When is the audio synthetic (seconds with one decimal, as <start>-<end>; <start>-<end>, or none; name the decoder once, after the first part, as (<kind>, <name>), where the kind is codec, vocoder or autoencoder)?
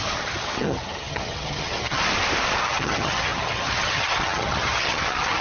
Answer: 0.0-2.0 (vocoder, HiFi-GAN); 2.6-5.4